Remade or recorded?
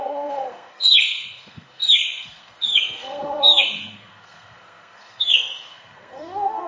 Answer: remade